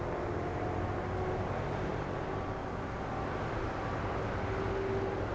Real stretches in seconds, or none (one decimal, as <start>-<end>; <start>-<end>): 0.0-5.3